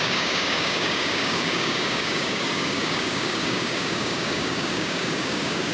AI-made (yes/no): yes